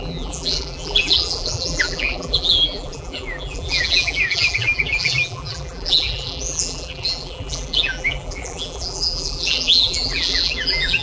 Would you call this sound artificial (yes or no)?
yes